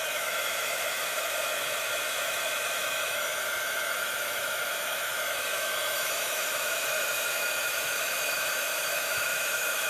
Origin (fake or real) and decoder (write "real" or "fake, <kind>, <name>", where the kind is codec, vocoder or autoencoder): fake, autoencoder, DAC-VAE